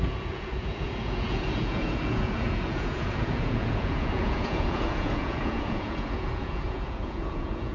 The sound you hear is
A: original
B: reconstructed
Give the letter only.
B